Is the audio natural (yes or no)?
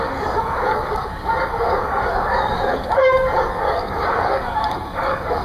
no